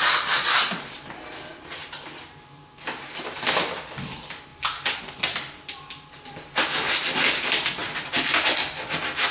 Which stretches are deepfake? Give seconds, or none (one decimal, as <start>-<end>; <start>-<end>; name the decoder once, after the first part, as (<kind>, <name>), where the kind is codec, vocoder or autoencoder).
none

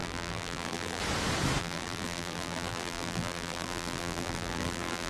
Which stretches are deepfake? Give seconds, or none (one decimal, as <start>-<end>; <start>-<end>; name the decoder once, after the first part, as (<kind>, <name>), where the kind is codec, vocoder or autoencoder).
0.0-1.0 (vocoder, BigVGAN v2); 1.6-5.1

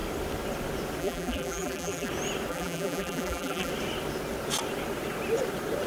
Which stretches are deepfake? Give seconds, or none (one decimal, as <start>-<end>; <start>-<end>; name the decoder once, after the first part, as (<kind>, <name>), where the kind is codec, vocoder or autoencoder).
1.0-2.1 (vocoder, BigVGAN v2); 2.5-3.7